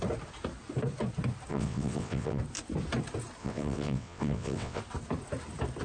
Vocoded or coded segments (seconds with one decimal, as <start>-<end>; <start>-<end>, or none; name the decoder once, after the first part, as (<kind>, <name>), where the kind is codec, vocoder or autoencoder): 1.5-2.4 (vocoder, WaveNeXt); 3.4-4.8